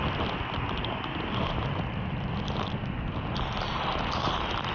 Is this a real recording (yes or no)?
yes